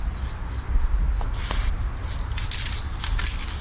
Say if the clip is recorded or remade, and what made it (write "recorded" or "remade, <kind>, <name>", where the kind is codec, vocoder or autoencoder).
recorded